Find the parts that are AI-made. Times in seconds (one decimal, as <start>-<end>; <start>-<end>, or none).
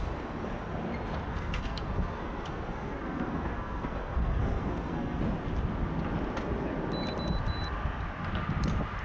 1.3-5.2